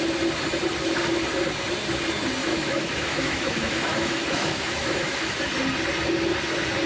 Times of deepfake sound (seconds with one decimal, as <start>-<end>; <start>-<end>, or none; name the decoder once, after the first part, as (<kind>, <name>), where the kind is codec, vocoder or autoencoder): 2.5-5.4 (autoencoder, DAC-VAE)